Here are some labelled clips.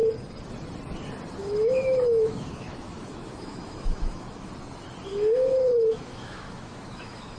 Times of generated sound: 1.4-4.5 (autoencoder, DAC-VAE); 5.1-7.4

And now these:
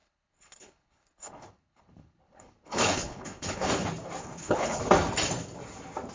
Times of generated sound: 0.0-3.7 (codec, HILCodec); 4.2-4.8